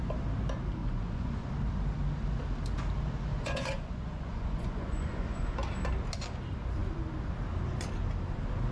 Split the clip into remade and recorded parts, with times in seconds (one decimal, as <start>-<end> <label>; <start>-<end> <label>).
0.0-0.8 recorded; 0.8-1.5 remade; 1.5-3.3 recorded; 3.3-5.5 remade; 5.5-8.7 recorded